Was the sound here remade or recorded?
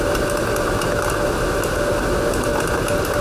recorded